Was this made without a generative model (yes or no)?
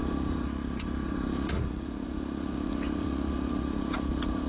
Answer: no